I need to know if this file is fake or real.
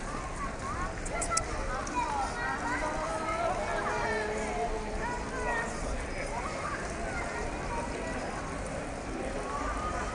real